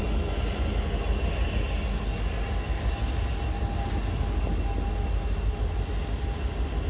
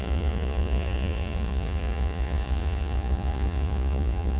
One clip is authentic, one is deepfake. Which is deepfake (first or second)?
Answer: second